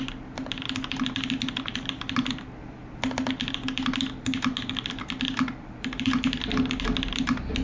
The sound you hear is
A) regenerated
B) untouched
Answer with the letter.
B